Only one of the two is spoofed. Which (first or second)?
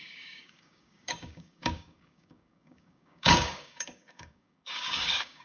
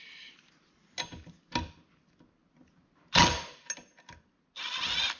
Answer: first